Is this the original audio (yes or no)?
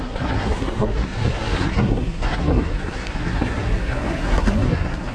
no